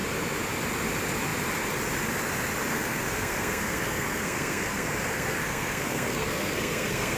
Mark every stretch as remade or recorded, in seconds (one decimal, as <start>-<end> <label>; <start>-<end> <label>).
0.0-2.7 recorded; 2.7-7.2 remade

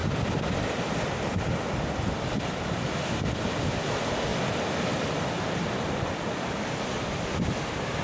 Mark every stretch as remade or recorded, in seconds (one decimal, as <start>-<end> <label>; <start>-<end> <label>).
0.0-1.4 remade; 1.4-4.3 recorded; 4.3-6.9 remade; 6.9-8.0 recorded

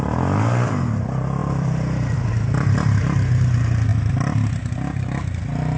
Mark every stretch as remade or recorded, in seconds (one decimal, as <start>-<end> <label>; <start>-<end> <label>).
0.0-1.4 recorded; 1.4-2.3 remade; 2.3-5.8 recorded